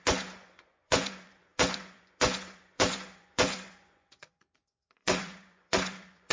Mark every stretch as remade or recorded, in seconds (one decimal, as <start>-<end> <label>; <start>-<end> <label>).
0.0-6.3 remade